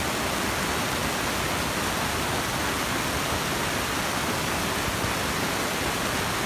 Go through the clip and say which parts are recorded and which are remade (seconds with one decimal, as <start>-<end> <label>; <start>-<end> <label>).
0.0-6.5 recorded